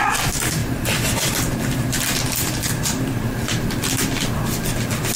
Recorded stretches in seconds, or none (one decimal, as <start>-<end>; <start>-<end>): 0.0-5.2